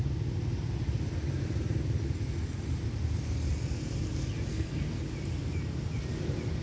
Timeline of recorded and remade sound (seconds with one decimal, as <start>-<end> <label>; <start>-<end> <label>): 0.0-4.5 recorded; 4.5-5.0 remade; 5.0-6.6 recorded